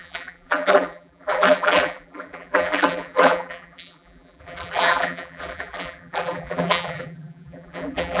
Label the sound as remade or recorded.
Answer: remade